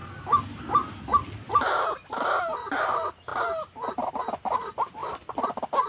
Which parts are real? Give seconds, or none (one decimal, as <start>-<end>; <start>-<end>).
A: 0.0-5.9